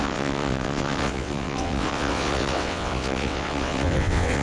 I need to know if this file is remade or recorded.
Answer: remade